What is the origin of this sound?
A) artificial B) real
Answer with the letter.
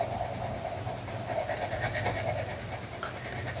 B